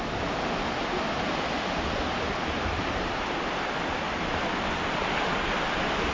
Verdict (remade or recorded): recorded